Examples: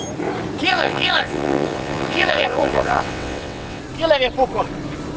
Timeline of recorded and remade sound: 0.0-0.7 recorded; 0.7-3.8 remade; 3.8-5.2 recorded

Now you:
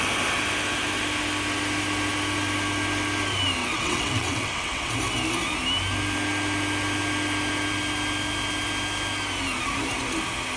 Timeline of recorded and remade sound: 0.0-3.6 recorded; 3.6-4.9 remade; 4.9-10.6 recorded

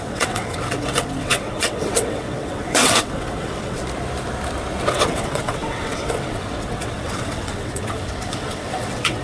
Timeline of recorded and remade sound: 0.0-3.8 remade; 3.8-4.9 recorded; 4.9-9.2 remade

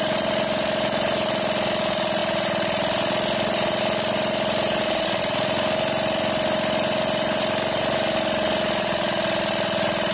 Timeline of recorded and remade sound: 0.0-10.1 recorded

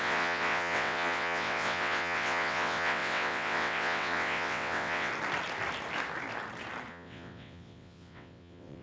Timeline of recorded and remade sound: 0.0-5.1 remade; 5.1-6.9 recorded; 6.9-8.8 remade

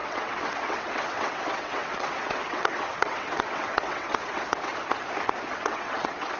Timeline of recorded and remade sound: 0.0-4.7 remade; 4.7-5.5 recorded; 5.5-6.4 remade

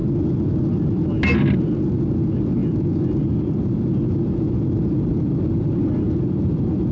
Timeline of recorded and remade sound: 0.0-6.9 recorded

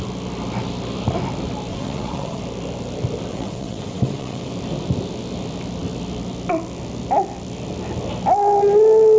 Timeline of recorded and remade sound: 0.0-1.7 recorded; 1.7-2.4 remade; 2.4-3.3 recorded; 3.3-4.5 remade; 4.5-9.2 recorded